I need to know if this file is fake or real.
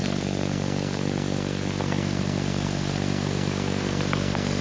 fake